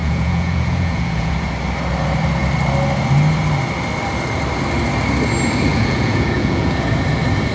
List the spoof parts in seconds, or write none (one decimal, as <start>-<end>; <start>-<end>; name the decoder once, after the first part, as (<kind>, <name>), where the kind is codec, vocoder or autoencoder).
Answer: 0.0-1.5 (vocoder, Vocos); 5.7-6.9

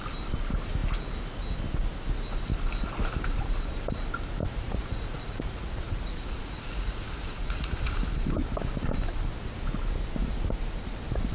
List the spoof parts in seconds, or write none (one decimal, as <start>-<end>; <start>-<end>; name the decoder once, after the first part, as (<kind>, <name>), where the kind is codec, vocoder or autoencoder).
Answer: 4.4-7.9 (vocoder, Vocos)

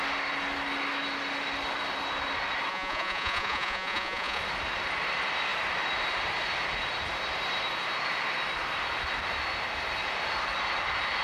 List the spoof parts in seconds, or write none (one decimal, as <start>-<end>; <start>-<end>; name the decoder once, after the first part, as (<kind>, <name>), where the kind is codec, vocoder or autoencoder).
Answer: 2.7-4.4 (vocoder, Vocos)

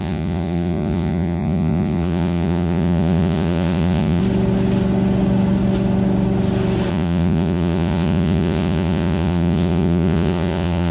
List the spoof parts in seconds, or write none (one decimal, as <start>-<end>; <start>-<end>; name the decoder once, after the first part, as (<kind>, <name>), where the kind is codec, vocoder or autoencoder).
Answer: 0.0-4.2 (vocoder, Vocos); 6.9-10.9

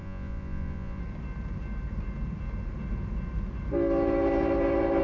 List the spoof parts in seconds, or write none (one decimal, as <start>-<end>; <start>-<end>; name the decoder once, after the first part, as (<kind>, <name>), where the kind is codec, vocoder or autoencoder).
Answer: 0.0-1.0 (vocoder, Vocos)

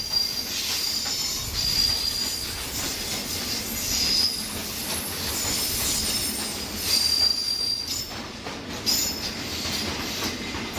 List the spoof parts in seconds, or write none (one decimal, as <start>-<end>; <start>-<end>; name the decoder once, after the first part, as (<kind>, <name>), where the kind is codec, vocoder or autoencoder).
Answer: none

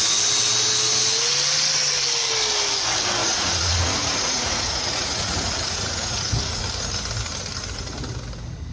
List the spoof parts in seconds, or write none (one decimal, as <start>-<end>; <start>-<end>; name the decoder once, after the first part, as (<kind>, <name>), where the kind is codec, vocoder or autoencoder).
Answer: 3.2-6.6 (vocoder, Vocos)